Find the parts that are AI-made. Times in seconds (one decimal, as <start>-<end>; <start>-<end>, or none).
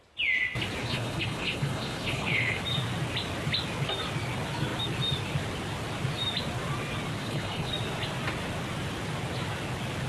0.8-2.6; 7.2-7.7